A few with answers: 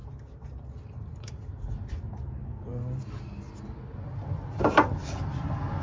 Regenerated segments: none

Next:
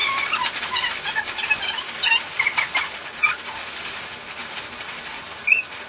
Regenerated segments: none

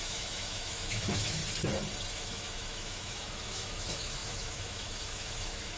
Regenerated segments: 0.0-1.4 (autoencoder, DAC-VAE); 2.1-5.8

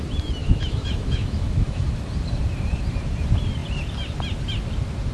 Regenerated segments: 0.4-1.9 (autoencoder, DAC-VAE)

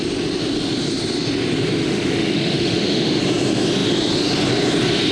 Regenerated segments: 1.8-3.2 (autoencoder, DAC-VAE)

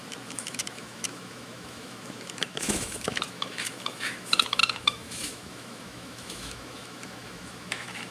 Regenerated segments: 0.0-8.1 (autoencoder, DAC-VAE)